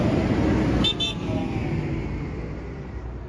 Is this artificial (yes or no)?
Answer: no